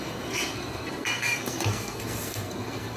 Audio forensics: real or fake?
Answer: fake